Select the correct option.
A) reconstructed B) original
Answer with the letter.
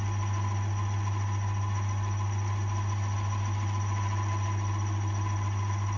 B